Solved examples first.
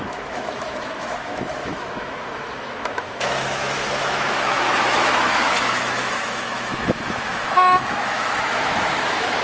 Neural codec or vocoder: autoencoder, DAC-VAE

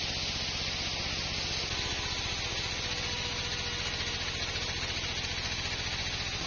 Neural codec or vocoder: none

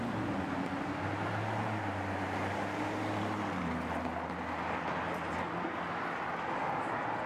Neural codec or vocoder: none